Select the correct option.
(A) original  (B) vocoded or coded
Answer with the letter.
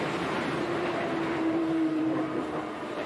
B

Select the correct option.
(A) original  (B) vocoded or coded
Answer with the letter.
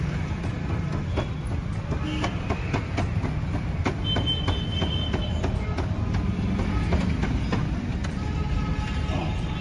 A